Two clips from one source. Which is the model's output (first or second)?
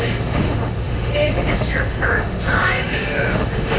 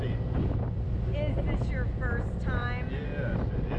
first